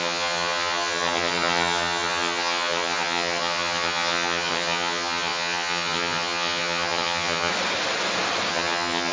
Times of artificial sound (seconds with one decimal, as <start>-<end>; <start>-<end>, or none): 0.0-7.5; 8.5-9.1